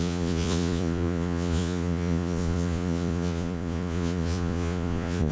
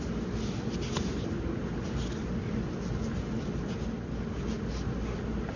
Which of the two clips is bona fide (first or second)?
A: second